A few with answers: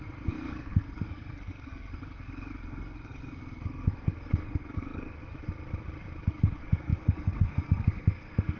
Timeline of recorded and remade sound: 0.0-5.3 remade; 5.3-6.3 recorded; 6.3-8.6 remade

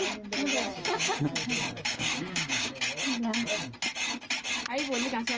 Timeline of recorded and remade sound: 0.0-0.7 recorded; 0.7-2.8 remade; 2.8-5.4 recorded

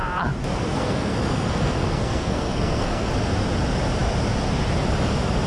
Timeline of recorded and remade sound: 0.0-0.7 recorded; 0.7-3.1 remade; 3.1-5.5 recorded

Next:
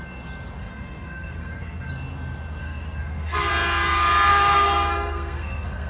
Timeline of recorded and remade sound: 0.0-0.6 recorded; 0.6-1.9 remade; 1.9-2.6 recorded; 2.6-3.5 remade; 3.5-4.3 recorded; 4.3-5.9 remade

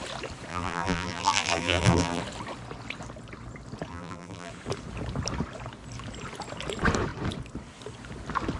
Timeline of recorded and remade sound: 0.0-0.5 recorded; 0.5-2.2 remade; 2.2-3.9 recorded; 3.9-4.5 remade; 4.5-8.6 recorded